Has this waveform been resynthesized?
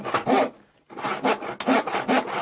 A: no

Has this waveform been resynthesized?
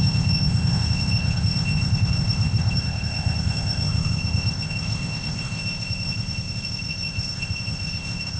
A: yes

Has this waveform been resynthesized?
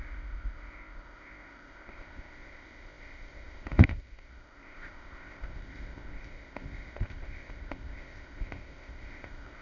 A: yes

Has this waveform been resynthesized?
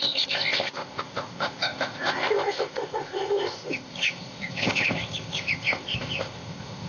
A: yes